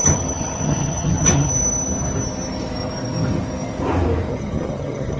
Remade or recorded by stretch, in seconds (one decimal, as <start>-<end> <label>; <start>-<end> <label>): 0.0-1.5 remade; 1.5-4.3 recorded; 4.3-5.2 remade